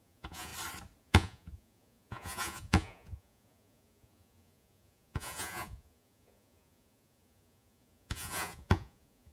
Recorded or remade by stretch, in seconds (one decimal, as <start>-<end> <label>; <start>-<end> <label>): 0.0-0.5 remade; 0.5-1.0 recorded; 1.0-9.3 remade